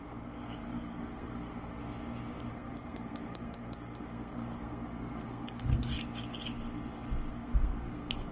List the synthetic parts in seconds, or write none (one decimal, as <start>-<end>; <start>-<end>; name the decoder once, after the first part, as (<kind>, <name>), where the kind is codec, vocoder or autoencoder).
0.0-1.8 (codec, SNAC); 2.5-5.9; 7.3-8.3

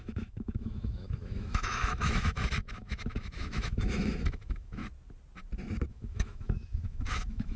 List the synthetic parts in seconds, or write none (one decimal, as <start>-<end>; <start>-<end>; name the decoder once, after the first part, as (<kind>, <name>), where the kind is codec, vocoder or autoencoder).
0.0-4.8 (autoencoder, DAC-VAE); 5.9-7.6

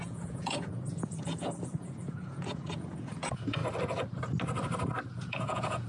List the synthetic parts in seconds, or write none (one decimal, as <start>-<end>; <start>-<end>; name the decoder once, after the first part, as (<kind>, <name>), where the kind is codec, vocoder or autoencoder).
0.0-3.6 (vocoder, Vocos); 5.1-5.9

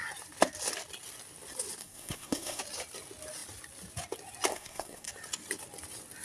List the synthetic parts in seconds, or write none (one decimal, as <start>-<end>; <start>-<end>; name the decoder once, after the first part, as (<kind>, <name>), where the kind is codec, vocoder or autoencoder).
1.8-2.6 (codec, SNAC); 4.5-5.1